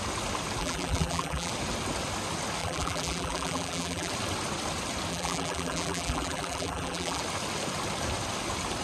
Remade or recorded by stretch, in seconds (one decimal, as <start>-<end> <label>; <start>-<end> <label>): 0.0-0.6 recorded; 0.6-1.5 remade; 1.5-2.6 recorded; 2.6-4.1 remade; 4.1-5.1 recorded; 5.1-7.2 remade; 7.2-8.8 recorded